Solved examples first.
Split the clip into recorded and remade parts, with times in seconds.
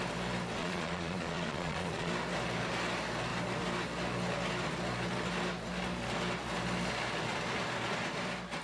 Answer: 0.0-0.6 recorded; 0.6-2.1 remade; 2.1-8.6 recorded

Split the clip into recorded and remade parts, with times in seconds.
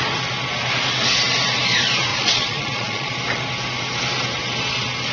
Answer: 0.0-2.1 recorded; 2.1-3.1 remade; 3.1-5.1 recorded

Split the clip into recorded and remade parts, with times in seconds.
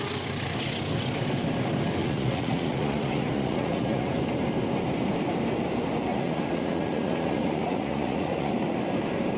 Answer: 0.0-2.0 recorded; 2.0-4.1 remade; 4.1-6.1 recorded; 6.1-8.5 remade; 8.5-9.4 recorded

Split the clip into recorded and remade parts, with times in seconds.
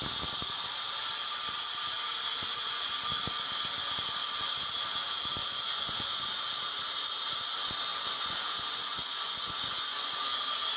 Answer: 0.0-2.3 recorded; 2.3-2.9 remade; 2.9-5.4 recorded; 5.4-6.4 remade; 6.4-7.9 recorded; 7.9-10.4 remade; 10.4-10.8 recorded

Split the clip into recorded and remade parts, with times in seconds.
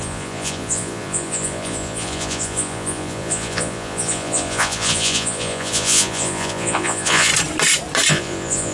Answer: 0.0-7.3 remade; 7.3-8.1 recorded; 8.1-8.7 remade